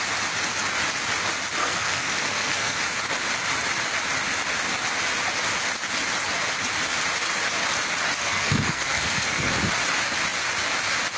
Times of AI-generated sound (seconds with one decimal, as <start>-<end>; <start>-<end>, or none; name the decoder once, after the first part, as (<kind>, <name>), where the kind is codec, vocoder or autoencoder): 1.6-2.8 (codec, SNAC); 8.2-9.5